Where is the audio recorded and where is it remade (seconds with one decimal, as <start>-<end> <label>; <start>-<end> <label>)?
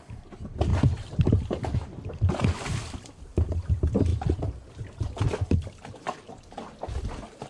0.0-7.5 recorded